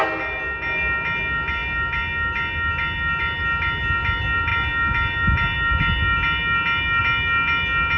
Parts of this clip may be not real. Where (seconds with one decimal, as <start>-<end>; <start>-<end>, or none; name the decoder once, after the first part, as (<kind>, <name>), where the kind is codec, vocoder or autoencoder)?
none